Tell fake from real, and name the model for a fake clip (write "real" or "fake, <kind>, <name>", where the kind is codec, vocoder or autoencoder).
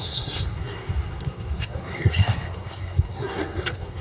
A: fake, codec, SNAC